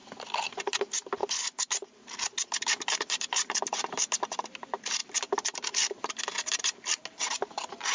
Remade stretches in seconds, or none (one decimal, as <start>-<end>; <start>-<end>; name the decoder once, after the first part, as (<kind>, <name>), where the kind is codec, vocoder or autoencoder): none